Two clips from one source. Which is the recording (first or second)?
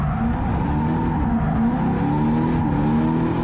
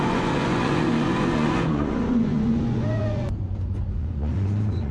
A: first